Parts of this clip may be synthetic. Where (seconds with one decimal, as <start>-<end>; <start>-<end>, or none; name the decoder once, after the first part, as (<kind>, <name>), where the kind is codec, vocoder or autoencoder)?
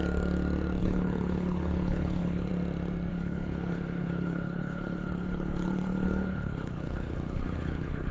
0.8-2.5 (codec, HILCodec); 3.1-8.1